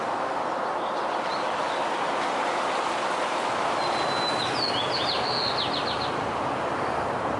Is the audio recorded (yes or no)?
yes